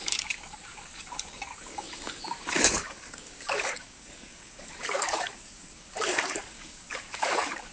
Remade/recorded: remade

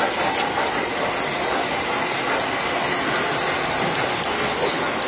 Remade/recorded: recorded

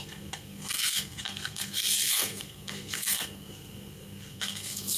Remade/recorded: remade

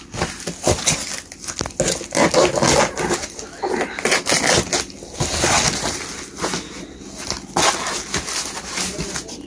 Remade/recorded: recorded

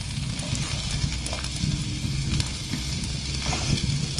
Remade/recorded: recorded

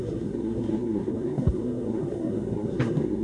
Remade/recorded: remade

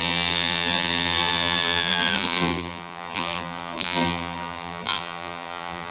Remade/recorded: remade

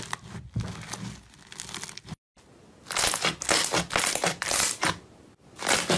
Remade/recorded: recorded